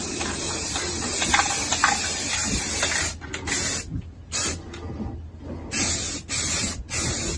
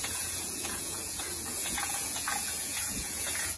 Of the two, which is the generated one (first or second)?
second